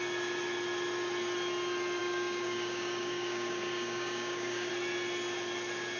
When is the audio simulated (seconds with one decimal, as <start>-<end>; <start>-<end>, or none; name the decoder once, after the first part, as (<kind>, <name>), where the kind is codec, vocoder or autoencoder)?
2.0-4.7 (codec, DAC)